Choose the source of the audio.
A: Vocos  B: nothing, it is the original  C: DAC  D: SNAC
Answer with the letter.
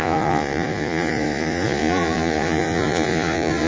A